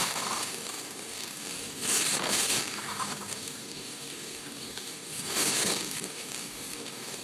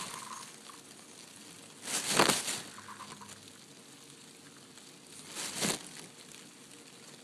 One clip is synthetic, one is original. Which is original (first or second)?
second